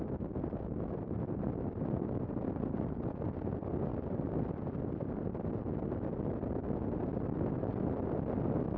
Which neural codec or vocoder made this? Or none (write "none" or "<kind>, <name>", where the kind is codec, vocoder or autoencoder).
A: none